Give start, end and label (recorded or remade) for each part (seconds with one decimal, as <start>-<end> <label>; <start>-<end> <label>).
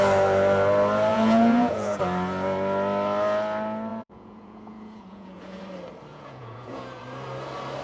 0.0-1.1 recorded; 1.1-2.0 remade; 2.0-3.9 recorded; 3.9-5.6 remade; 5.6-6.1 recorded; 6.1-7.0 remade; 7.0-7.8 recorded